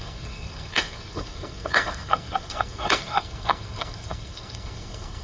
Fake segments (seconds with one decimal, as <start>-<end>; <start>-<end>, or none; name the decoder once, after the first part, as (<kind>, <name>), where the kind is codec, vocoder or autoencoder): 0.0-5.2 (codec, SNAC)